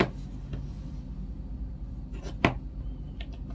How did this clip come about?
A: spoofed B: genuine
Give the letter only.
B